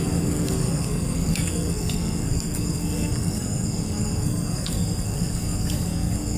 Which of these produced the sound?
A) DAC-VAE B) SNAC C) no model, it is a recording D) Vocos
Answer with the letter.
B